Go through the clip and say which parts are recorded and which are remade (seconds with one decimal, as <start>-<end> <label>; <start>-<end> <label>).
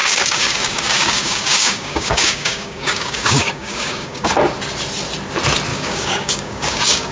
0.0-4.3 remade; 4.3-5.7 recorded; 5.7-7.1 remade